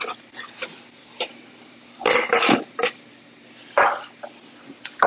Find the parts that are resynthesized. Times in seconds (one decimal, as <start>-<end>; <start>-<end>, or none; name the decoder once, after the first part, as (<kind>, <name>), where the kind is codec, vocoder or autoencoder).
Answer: none